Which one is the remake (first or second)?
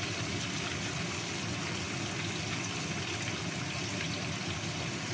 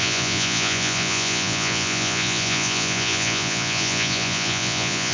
second